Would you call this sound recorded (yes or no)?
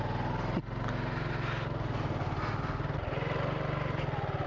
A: yes